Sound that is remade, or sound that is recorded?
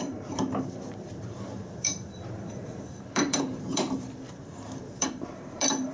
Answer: remade